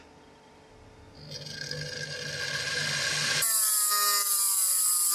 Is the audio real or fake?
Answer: real